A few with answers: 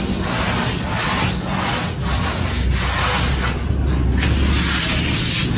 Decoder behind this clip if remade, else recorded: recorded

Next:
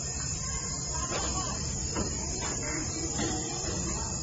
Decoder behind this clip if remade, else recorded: remade, vocoder, BigVGAN v2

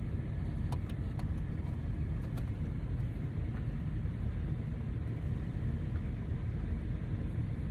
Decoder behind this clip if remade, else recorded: recorded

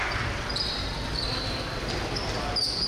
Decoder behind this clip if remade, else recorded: remade, vocoder, BigVGAN v2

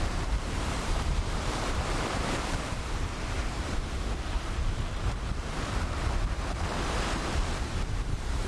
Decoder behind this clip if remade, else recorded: remade, vocoder, BigVGAN v2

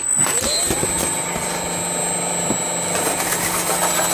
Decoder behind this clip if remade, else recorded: recorded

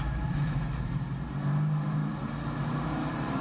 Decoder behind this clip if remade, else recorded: remade, vocoder, BigVGAN v2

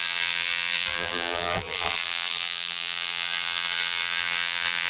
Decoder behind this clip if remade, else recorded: remade, vocoder, BigVGAN v2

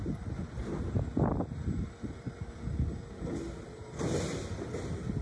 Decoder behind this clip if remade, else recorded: recorded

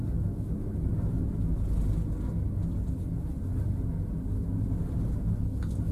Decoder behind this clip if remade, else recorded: recorded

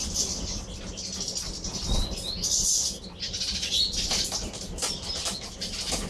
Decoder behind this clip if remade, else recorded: recorded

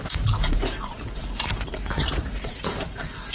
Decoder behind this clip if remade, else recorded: remade, vocoder, BigVGAN v2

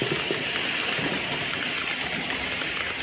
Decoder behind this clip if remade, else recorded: remade, vocoder, BigVGAN v2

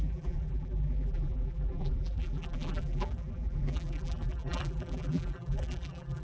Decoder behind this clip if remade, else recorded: remade, vocoder, BigVGAN v2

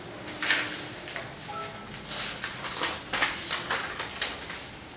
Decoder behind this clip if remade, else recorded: recorded